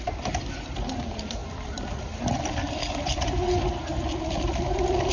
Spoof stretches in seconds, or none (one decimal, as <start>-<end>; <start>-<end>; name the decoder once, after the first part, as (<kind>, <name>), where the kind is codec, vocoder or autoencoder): 0.0-3.8 (vocoder, BigVGAN v2); 4.5-5.1